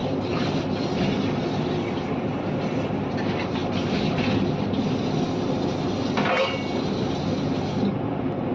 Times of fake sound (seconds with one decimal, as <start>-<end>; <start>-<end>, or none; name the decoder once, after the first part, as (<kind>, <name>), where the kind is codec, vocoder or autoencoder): none

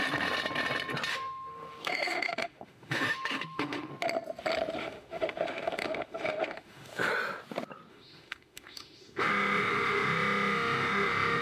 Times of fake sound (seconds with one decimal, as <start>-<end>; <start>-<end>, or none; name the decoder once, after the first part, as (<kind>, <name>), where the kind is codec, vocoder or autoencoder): 1.1-3.9 (autoencoder, DAC-VAE); 4.8-7.1; 7.9-11.4

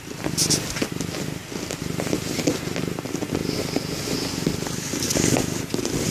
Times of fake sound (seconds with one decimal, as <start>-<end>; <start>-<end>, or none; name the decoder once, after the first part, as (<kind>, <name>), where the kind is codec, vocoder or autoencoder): none

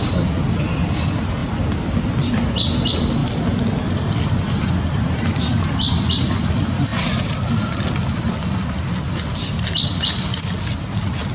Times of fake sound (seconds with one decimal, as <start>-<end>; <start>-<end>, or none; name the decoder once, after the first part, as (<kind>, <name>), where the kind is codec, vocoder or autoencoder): none

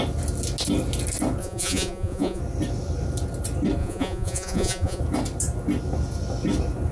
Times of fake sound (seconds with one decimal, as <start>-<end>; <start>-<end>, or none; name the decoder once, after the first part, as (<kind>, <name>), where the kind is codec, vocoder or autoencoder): 1.4-2.4 (vocoder, Vocos); 3.8-5.0

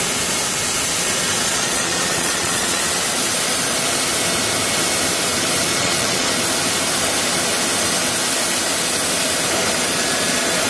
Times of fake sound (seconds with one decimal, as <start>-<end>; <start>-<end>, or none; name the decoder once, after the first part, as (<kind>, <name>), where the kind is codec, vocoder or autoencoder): 1.4-2.8 (vocoder, Vocos); 5.7-6.3